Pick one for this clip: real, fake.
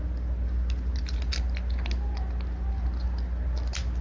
real